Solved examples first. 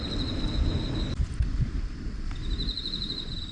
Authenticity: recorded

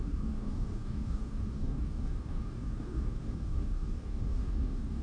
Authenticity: remade